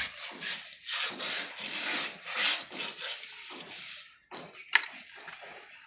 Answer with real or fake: real